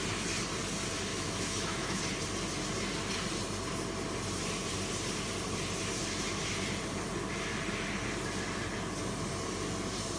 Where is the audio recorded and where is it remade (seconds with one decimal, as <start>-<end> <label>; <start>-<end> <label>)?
0.0-1.1 recorded; 1.1-2.0 remade; 2.0-10.2 recorded